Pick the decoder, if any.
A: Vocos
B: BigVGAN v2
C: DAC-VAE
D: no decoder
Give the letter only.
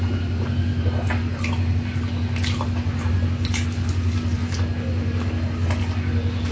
D